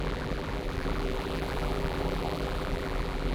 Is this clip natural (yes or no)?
no